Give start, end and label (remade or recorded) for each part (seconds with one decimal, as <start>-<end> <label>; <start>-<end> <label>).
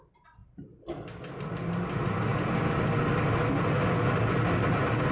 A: 0.0-5.1 recorded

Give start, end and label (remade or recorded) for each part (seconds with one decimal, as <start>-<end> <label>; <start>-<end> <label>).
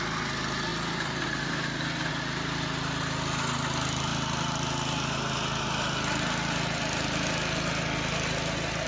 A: 0.0-8.9 recorded